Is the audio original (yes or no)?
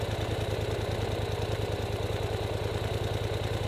yes